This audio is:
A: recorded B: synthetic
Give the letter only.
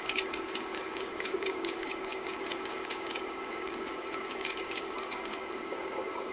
B